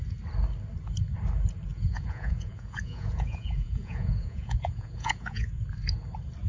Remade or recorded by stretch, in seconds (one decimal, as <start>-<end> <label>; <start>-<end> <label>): 0.0-1.7 recorded; 1.7-5.6 remade; 5.6-6.5 recorded